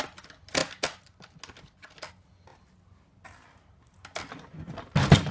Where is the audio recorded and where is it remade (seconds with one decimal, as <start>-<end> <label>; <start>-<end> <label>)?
0.0-5.3 recorded